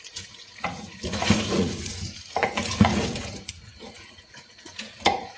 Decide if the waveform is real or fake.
fake